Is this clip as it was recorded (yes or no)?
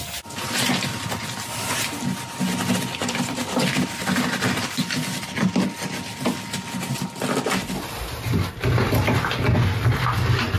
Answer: yes